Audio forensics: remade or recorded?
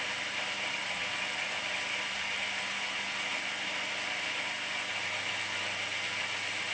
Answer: recorded